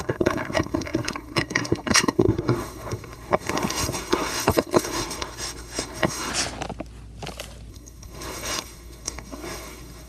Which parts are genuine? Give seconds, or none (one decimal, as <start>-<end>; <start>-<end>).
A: 6.3-7.7